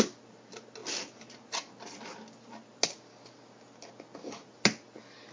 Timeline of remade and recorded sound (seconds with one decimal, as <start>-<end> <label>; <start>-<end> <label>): 0.0-5.3 recorded